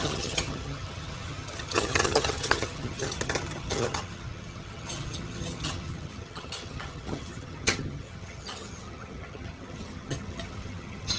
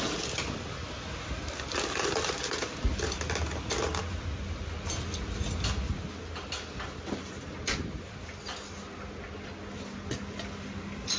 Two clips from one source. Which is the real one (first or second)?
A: second